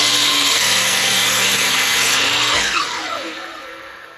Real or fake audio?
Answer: fake